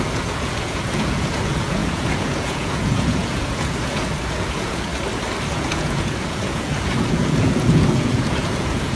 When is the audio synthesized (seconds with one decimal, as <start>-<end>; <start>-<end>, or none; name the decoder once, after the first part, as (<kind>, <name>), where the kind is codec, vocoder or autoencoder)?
0.0-4.9 (vocoder, Vocos); 5.5-9.0